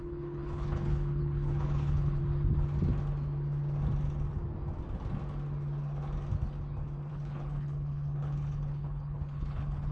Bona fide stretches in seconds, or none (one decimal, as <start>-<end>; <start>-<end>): 2.2-7.1

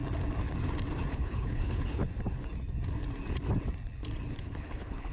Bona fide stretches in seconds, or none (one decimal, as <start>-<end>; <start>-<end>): 0.0-1.1; 2.0-4.4

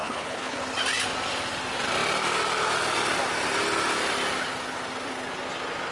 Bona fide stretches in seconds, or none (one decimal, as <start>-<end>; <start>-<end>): 0.6-5.9